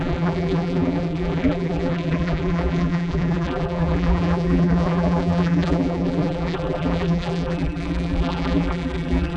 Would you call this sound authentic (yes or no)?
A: no